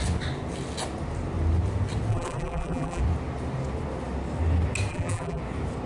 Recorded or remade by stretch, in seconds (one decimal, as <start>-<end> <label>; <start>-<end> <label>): 0.0-2.1 recorded; 2.1-3.0 remade; 3.0-4.9 recorded; 4.9-5.4 remade; 5.4-5.9 recorded